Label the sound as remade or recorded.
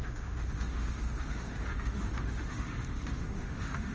remade